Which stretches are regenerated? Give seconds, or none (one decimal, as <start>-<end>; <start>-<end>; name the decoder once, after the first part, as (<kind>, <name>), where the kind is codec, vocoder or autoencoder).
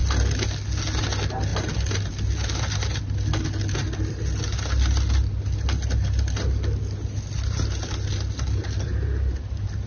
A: none